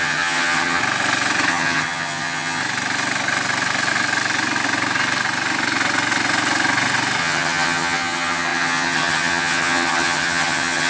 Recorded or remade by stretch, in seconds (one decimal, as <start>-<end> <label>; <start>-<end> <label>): 0.0-0.8 remade; 0.8-1.5 recorded; 1.5-2.6 remade; 2.6-7.2 recorded; 7.2-10.9 remade